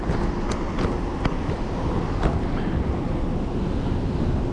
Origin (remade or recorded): recorded